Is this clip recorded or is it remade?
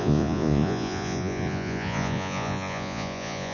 remade